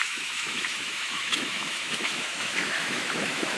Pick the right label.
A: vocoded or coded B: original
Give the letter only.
A